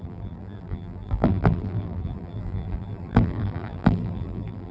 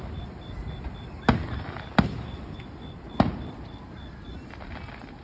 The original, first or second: second